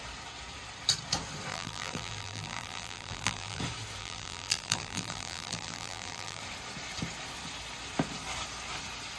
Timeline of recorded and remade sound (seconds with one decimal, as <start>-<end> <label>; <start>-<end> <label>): 0.0-1.5 recorded; 1.5-3.6 remade; 3.6-4.0 recorded; 4.0-6.4 remade; 6.4-9.2 recorded